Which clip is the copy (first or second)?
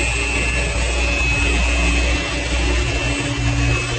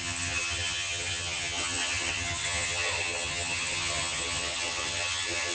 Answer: second